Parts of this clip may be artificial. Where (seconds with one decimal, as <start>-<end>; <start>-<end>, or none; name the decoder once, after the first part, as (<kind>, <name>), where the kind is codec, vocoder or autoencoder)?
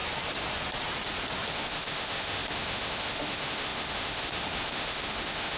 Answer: 1.5-5.6 (autoencoder, DAC-VAE)